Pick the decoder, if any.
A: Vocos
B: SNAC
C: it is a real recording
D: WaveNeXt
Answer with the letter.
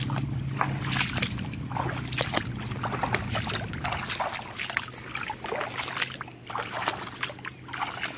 C